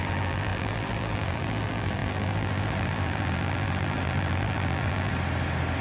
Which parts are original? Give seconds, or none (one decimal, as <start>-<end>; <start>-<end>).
5.1-5.8